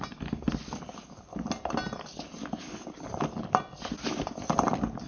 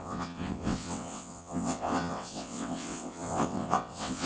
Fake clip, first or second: second